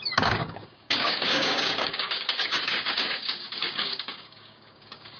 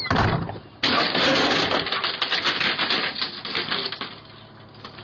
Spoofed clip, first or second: first